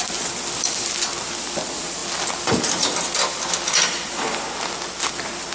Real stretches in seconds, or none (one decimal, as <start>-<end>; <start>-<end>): 0.0-5.5